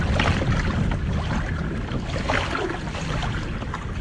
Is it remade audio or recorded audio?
recorded